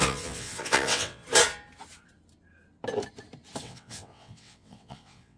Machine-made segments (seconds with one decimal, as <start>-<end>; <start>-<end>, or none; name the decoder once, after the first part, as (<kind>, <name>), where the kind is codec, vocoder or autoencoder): 0.0-1.2 (vocoder, WaveNeXt); 3.6-5.4